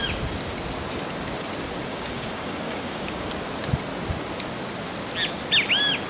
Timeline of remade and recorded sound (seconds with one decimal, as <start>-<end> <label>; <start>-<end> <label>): 0.0-1.9 recorded; 1.9-3.3 remade; 3.3-6.1 recorded

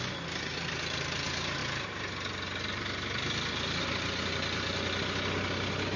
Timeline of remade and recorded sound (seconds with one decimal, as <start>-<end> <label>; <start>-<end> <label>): 0.0-6.0 recorded